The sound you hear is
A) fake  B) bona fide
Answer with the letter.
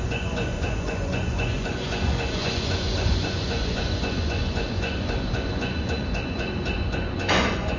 A